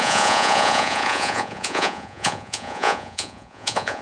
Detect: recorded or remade remade